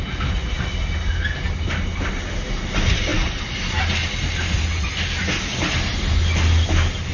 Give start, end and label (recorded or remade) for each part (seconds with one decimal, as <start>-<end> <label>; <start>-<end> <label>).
0.0-7.1 recorded

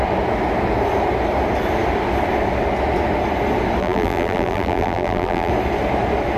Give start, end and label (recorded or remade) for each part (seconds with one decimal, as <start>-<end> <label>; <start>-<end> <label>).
0.0-3.8 recorded; 3.8-5.5 remade; 5.5-6.4 recorded

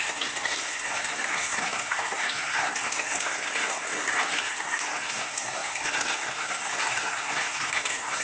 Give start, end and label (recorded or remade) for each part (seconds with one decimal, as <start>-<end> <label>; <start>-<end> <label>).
0.0-8.2 remade

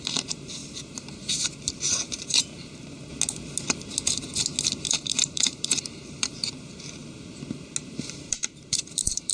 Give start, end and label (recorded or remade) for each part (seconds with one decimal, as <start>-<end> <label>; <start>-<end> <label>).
0.0-3.1 remade; 3.1-4.9 recorded; 4.9-7.0 remade; 7.0-7.8 recorded; 7.8-9.3 remade

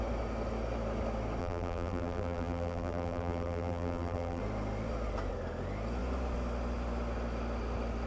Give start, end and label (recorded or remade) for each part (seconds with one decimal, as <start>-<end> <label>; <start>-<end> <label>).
0.0-1.4 recorded; 1.4-4.4 remade; 4.4-8.1 recorded

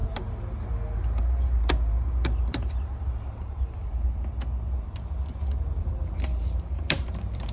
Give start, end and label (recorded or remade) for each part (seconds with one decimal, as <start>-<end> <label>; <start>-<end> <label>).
0.0-1.2 recorded; 1.2-3.9 remade; 3.9-5.8 recorded; 5.8-7.5 remade

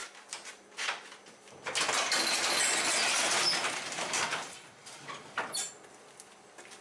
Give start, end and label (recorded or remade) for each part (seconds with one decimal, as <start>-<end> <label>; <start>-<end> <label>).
0.0-0.5 remade; 0.5-3.4 recorded; 3.4-5.7 remade; 5.7-6.8 recorded